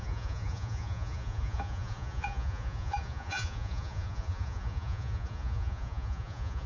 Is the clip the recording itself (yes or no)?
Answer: no